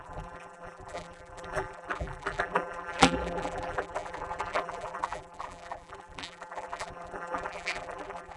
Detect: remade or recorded remade